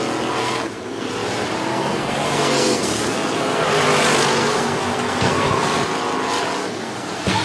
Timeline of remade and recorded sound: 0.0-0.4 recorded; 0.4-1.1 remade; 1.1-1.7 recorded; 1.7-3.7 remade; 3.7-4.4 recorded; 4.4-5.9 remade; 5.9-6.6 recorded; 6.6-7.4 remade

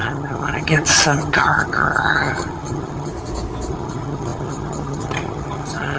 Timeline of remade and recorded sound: 0.0-3.1 remade; 3.1-3.7 recorded; 3.7-6.0 remade

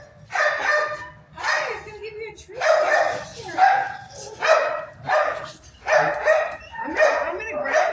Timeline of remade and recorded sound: 0.0-3.3 recorded; 3.3-7.9 remade

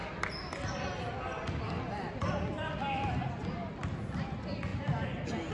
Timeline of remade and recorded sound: 0.0-5.5 recorded

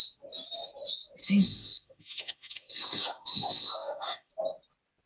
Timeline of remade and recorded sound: 0.0-1.2 recorded; 1.2-4.3 remade; 4.3-5.1 recorded

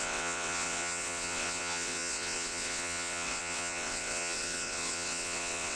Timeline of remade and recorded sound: 0.0-5.8 remade